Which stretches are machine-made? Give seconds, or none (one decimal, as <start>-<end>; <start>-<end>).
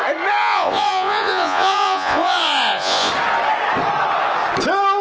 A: 0.4-3.1